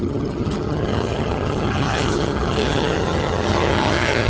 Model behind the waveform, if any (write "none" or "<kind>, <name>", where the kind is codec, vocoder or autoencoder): vocoder, HiFi-GAN